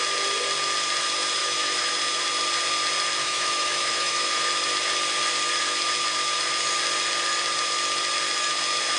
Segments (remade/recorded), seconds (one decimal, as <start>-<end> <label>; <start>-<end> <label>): 0.0-1.4 recorded; 1.4-1.9 remade; 1.9-3.2 recorded; 3.2-4.4 remade; 4.4-9.0 recorded